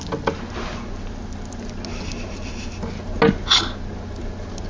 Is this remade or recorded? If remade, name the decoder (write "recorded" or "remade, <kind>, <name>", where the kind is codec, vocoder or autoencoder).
recorded